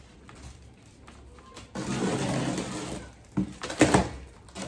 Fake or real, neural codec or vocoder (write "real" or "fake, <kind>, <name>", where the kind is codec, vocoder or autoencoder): real